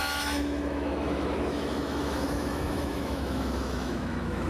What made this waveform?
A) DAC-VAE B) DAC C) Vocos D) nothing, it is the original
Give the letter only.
A